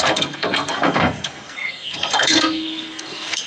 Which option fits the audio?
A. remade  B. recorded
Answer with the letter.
A